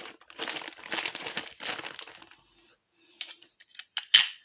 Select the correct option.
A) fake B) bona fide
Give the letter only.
B